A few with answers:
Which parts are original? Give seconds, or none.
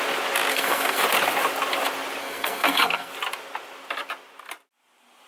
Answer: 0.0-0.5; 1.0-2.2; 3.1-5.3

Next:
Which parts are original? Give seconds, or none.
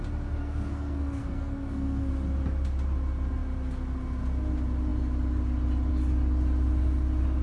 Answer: 0.0-0.4; 2.1-7.4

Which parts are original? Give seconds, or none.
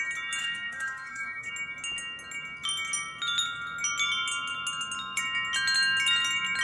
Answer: 0.0-0.4; 1.5-6.6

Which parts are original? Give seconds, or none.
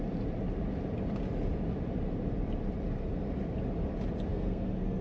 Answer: 0.0-4.3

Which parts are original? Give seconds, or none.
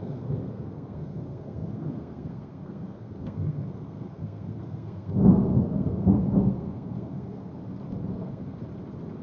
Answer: 7.5-8.1; 8.6-9.2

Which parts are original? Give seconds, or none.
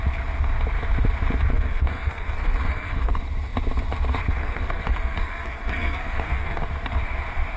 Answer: 0.0-1.5; 3.2-4.4; 6.6-7.6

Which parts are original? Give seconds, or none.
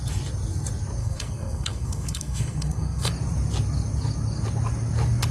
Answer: 0.0-1.0; 3.1-5.3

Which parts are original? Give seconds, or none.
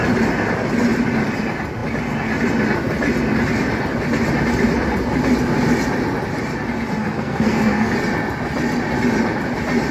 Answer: 0.0-7.0; 7.9-9.9